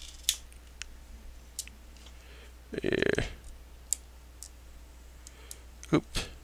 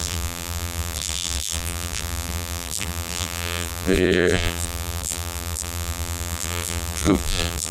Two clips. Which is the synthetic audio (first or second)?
second